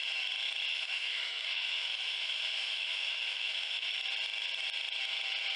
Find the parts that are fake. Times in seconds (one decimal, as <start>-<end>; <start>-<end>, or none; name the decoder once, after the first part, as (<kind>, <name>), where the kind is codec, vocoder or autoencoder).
0.7-3.9 (autoencoder, DAC-VAE)